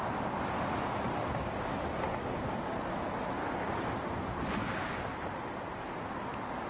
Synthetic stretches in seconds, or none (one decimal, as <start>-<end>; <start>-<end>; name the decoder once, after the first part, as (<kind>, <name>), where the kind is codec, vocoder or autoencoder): 2.1-2.9 (vocoder, BigVGAN v2); 4.6-6.1